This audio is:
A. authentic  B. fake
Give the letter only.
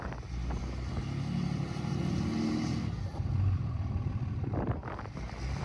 A